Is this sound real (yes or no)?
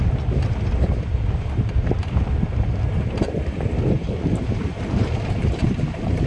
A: yes